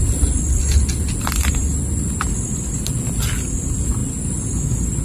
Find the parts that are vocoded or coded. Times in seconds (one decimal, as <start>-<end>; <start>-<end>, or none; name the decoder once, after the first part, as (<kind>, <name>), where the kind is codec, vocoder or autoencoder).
none